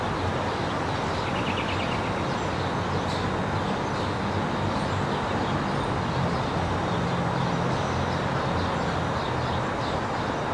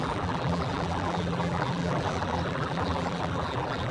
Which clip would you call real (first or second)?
first